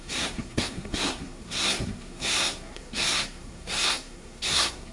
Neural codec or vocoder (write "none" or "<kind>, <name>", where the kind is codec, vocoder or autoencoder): codec, SNAC